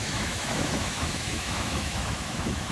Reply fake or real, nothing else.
fake